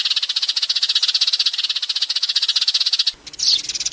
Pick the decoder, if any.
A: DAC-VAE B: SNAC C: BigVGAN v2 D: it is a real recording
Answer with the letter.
D